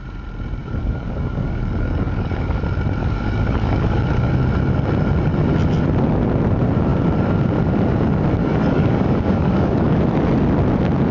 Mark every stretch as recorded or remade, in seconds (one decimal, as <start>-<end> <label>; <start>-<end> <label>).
0.0-0.6 recorded; 0.6-2.6 remade; 2.6-3.0 recorded; 3.0-4.3 remade; 4.3-8.4 recorded; 8.4-10.0 remade; 10.0-11.1 recorded